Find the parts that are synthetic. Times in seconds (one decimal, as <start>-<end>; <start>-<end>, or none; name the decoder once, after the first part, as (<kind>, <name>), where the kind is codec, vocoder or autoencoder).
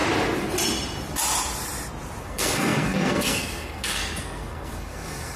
2.2-5.4 (codec, SNAC)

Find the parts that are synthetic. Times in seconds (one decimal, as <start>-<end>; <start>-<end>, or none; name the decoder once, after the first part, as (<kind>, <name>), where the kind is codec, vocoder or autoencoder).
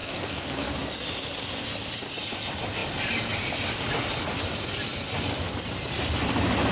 0.0-0.7 (codec, SNAC)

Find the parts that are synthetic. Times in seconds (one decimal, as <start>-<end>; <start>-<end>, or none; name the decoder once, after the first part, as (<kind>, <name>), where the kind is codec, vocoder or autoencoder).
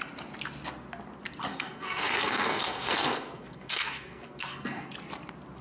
1.5-4.9 (codec, SNAC)